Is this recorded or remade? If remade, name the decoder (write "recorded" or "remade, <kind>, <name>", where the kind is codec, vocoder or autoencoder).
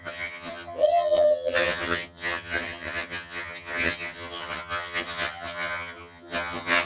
remade, vocoder, HiFi-GAN